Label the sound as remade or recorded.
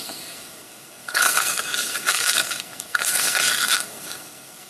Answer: remade